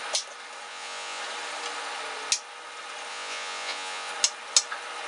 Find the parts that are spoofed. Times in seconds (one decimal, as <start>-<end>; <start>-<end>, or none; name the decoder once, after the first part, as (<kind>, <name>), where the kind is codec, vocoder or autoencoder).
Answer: 0.7-1.2 (vocoder, Vocos); 3.1-4.1